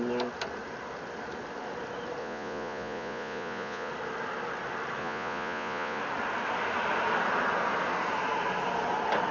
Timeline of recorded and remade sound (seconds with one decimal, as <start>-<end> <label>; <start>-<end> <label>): 0.0-2.2 recorded; 2.2-3.9 remade; 3.9-5.0 recorded; 5.0-6.0 remade; 6.0-9.3 recorded